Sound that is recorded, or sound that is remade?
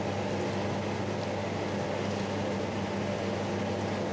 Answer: recorded